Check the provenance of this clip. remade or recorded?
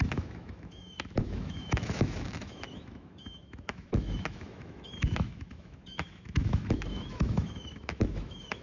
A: remade